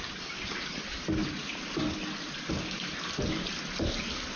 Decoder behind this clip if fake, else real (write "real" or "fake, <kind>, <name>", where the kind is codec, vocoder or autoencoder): real